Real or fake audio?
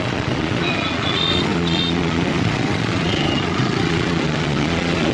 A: fake